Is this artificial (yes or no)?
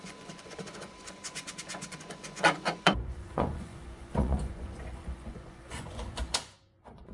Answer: yes